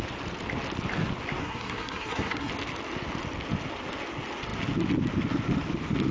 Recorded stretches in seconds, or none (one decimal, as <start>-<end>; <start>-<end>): 0.0-1.4; 2.5-6.1